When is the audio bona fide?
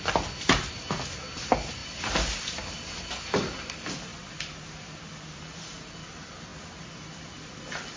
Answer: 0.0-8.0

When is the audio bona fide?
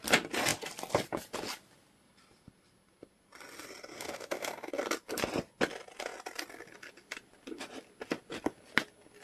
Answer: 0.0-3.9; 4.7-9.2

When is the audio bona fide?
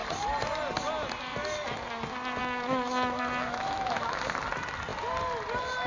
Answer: 0.0-2.4; 4.2-5.9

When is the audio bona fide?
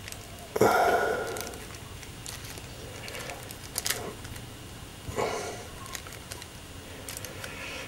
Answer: 0.0-7.9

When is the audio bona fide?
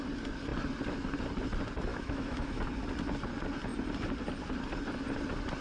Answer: 0.0-1.9; 2.6-5.6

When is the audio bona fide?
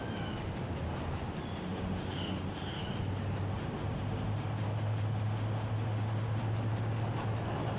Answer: 0.0-1.6; 2.8-3.5; 6.4-7.8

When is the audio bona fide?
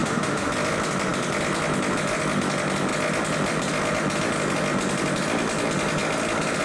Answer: 0.5-6.6